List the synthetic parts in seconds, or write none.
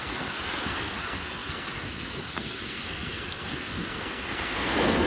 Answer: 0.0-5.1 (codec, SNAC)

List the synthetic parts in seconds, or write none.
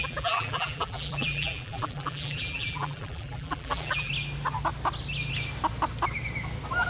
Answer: 0.0-4.1 (vocoder, BigVGAN v2)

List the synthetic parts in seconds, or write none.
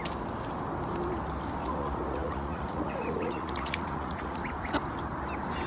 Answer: 1.6-4.4 (vocoder, Vocos)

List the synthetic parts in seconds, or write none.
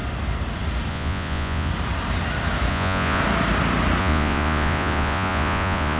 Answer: 0.9-1.7 (vocoder, Vocos); 2.7-3.2; 4.0-6.0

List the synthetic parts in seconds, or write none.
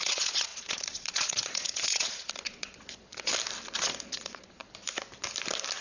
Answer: 0.0-3.3 (vocoder, Vocos); 3.8-4.6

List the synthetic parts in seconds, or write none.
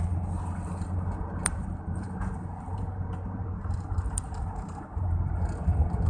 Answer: 1.4-5.1 (vocoder, BigVGAN v2)